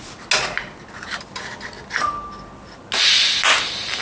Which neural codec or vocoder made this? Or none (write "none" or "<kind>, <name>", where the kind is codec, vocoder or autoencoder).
none